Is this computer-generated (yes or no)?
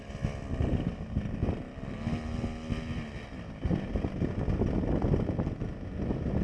no